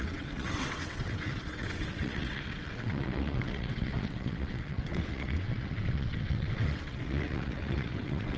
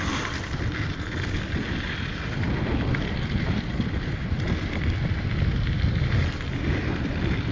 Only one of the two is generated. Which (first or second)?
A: first